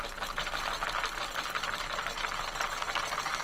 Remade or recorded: recorded